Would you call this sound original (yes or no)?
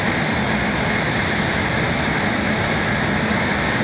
yes